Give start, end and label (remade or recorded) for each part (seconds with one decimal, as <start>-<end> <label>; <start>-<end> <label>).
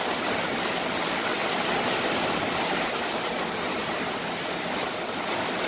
0.0-5.7 recorded